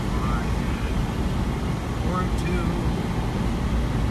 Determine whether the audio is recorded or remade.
recorded